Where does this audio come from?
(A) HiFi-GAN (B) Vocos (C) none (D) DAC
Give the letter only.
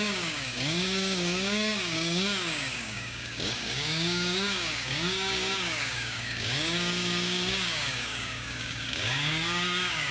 D